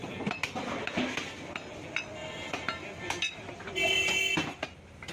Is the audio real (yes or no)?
yes